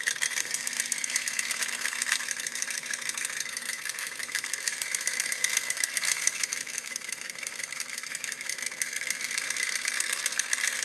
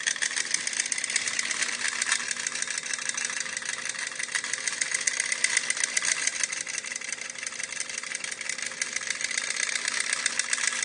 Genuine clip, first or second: second